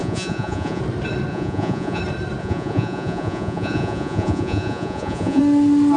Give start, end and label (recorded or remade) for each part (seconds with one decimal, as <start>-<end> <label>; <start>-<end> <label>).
0.0-0.8 remade; 0.8-1.3 recorded; 1.3-2.0 remade; 2.0-2.4 recorded; 2.4-5.4 remade; 5.4-6.0 recorded